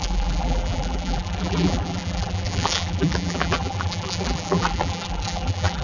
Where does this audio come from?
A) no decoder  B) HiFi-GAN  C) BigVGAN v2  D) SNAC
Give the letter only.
C